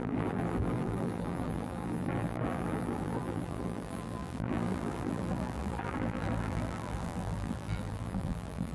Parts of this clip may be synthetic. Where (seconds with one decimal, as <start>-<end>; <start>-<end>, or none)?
0.0-8.7